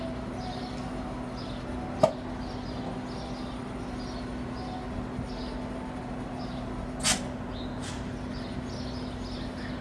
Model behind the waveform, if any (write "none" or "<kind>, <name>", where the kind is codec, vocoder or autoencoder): none